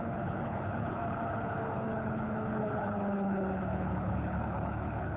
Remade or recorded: remade